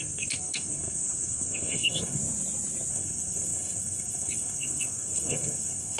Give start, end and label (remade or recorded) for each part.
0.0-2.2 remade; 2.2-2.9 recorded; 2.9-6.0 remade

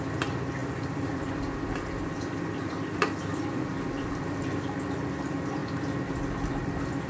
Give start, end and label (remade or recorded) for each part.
0.0-0.6 recorded; 0.6-4.2 remade; 4.2-7.1 recorded